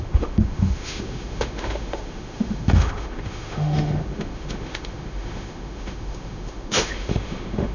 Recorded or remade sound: remade